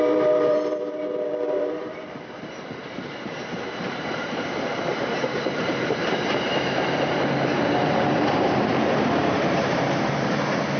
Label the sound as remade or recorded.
remade